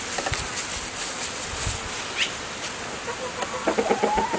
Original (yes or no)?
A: yes